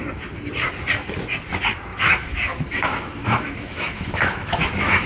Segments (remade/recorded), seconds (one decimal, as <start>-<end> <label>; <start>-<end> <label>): 0.0-1.9 recorded; 1.9-5.1 remade